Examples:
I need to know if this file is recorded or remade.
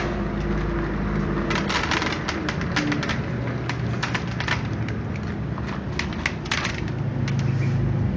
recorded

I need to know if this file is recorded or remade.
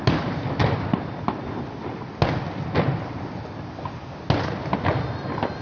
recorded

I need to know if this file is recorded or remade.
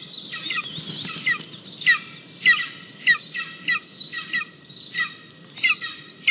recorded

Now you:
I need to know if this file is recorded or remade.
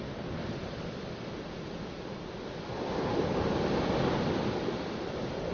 recorded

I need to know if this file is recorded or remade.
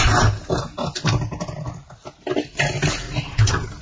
recorded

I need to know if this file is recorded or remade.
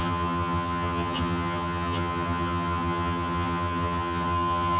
remade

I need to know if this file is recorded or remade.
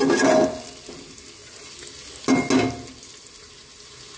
recorded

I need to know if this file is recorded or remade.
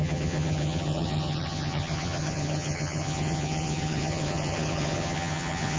remade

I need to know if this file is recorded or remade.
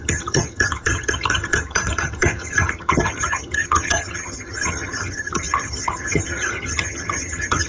remade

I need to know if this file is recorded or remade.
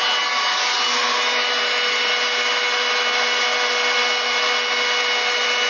recorded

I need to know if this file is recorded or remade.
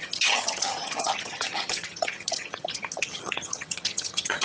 remade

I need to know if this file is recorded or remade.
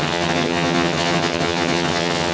remade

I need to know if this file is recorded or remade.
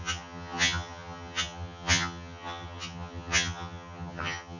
remade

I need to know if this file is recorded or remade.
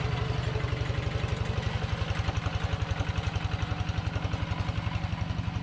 recorded